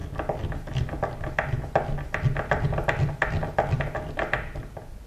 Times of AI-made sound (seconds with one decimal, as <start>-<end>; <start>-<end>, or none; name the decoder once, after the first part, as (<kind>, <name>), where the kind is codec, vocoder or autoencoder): none